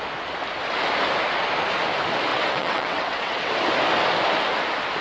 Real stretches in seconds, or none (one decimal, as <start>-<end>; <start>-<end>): 0.0-2.3; 3.5-5.0